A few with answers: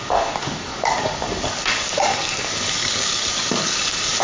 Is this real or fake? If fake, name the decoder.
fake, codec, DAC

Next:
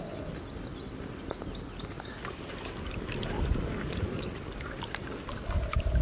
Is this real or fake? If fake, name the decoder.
real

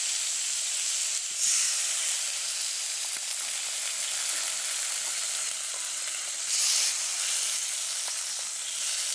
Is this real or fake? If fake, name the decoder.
real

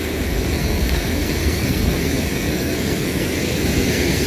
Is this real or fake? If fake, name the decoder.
fake, codec, SNAC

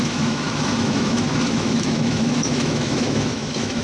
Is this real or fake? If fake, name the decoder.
fake, autoencoder, DAC-VAE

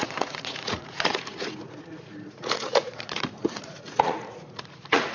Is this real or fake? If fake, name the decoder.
fake, vocoder, Vocos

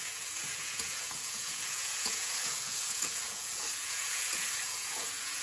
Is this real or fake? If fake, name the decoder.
fake, vocoder, Vocos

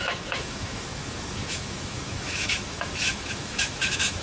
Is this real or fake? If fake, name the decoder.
fake, autoencoder, DAC-VAE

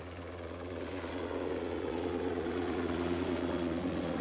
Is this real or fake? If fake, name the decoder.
fake, vocoder, Vocos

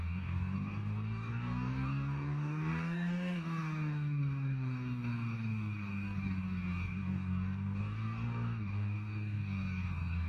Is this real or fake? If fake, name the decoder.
fake, codec, DAC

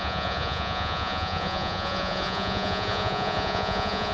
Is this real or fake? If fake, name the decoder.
fake, vocoder, Vocos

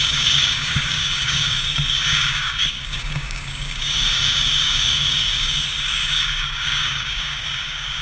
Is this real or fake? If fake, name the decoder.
fake, codec, DAC